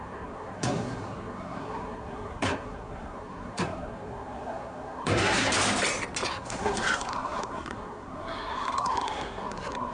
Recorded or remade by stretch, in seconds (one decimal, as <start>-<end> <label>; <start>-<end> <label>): 0.0-5.5 remade; 5.5-6.3 recorded; 6.3-9.9 remade